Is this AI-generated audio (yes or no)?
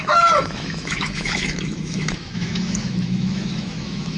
yes